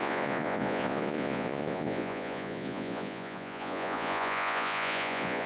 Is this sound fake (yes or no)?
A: yes